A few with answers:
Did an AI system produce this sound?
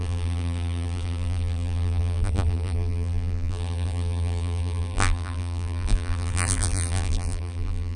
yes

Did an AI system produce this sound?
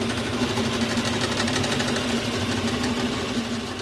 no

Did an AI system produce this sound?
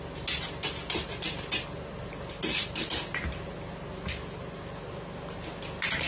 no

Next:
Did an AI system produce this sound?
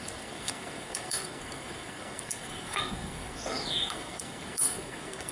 yes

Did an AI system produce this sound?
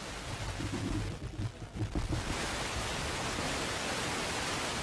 no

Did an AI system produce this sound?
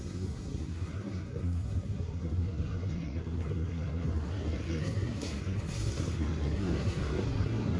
yes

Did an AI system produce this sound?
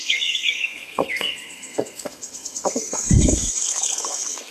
yes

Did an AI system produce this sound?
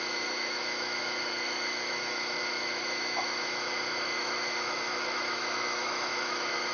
yes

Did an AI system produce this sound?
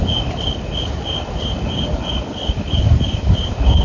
no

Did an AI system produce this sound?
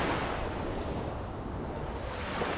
no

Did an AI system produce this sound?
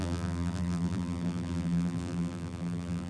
yes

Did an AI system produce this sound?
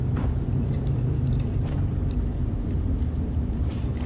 yes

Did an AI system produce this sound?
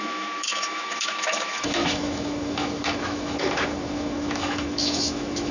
yes